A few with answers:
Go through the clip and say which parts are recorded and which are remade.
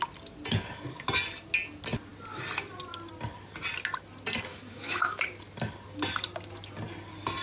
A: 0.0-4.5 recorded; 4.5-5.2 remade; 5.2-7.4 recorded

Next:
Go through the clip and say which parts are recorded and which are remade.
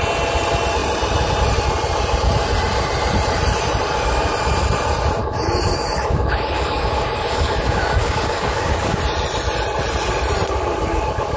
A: 0.0-5.2 recorded; 5.2-9.0 remade; 9.0-10.8 recorded; 10.8-11.4 remade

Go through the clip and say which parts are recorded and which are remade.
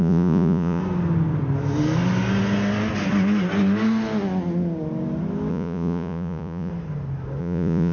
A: 0.0-0.8 remade; 0.8-5.5 recorded; 5.5-6.7 remade; 6.7-7.4 recorded; 7.4-7.9 remade